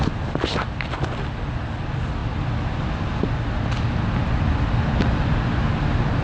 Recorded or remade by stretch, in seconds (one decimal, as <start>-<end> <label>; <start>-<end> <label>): 0.0-6.2 recorded